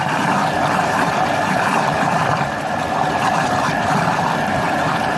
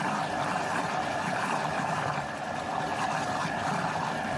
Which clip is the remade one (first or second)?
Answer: first